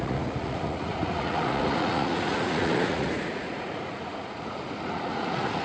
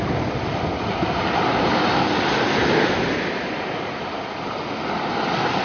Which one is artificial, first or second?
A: first